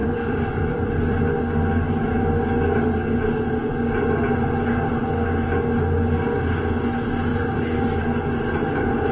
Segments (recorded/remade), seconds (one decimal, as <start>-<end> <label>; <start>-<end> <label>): 0.0-1.2 remade; 1.2-7.3 recorded; 7.3-8.0 remade; 8.0-9.1 recorded